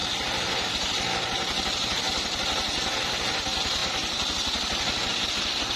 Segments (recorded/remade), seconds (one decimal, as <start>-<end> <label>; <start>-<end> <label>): 0.0-5.8 recorded